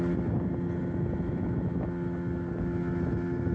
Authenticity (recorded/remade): recorded